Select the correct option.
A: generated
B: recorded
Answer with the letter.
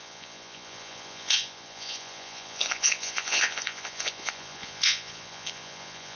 A